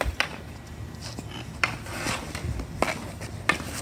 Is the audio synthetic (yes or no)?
no